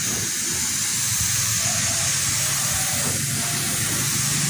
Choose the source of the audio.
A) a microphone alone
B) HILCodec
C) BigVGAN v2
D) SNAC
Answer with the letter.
A